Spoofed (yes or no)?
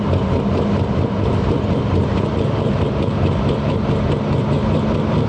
yes